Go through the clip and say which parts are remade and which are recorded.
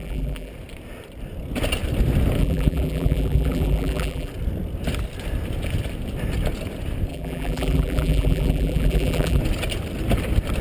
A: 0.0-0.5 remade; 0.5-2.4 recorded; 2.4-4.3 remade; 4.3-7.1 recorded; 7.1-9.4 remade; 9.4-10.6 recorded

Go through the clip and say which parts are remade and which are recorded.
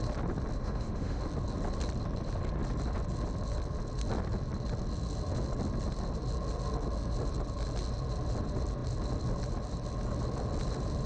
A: 0.0-0.6 recorded; 0.6-1.2 remade; 1.2-11.1 recorded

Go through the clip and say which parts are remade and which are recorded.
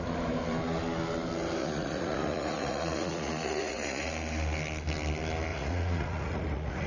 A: 0.0-1.6 recorded; 1.6-4.1 remade; 4.1-5.5 recorded; 5.5-6.9 remade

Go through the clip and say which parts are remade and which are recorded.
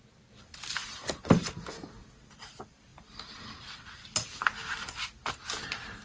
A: 0.0-6.0 recorded